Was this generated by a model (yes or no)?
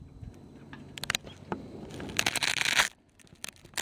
no